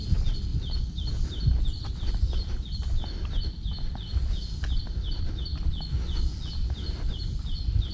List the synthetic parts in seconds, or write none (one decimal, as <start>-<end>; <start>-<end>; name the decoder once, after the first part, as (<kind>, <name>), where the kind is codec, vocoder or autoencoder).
none